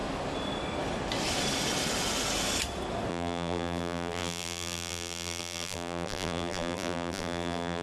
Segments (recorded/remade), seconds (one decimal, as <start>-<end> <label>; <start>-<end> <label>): 0.0-3.1 recorded; 3.1-7.8 remade